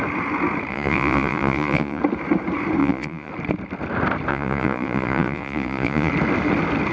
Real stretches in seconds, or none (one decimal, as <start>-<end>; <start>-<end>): 0.0-0.7; 2.0-2.8; 3.3-4.3; 6.1-6.9